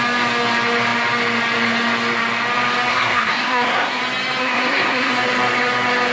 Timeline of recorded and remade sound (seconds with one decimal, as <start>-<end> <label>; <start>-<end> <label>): 0.0-2.9 recorded; 2.9-4.0 remade; 4.0-4.4 recorded; 4.4-5.1 remade; 5.1-6.1 recorded